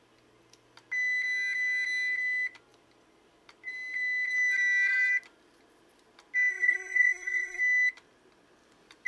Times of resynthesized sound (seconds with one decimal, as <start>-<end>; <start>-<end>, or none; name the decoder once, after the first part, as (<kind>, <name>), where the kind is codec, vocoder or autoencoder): 6.5-7.6 (codec, SNAC)